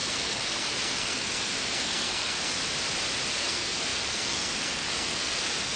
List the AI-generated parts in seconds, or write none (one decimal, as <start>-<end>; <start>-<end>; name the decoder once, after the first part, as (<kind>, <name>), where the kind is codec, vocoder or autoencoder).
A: 0.0-2.6 (codec, SNAC); 3.3-5.8